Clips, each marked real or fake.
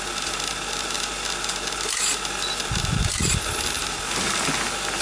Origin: real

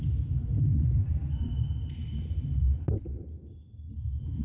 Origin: real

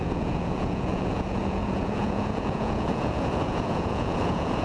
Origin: fake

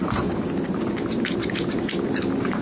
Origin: real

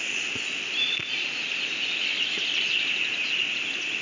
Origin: real